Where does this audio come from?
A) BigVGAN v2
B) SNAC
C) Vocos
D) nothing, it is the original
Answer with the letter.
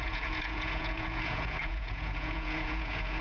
C